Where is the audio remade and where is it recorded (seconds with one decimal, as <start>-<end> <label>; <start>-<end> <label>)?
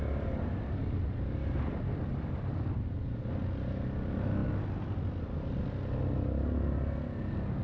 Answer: 0.0-7.6 recorded